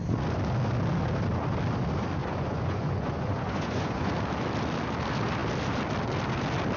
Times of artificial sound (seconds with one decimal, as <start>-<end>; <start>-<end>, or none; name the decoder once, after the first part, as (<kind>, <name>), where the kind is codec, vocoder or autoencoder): 2.2-4.1 (vocoder, Vocos)